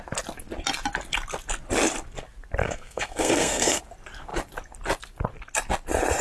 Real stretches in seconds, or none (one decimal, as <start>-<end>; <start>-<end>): 0.0-2.6; 3.8-6.2